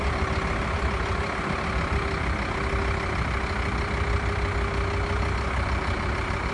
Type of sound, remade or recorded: recorded